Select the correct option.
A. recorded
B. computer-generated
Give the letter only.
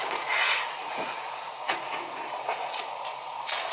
B